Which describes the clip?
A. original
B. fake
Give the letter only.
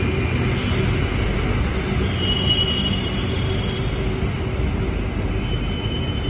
A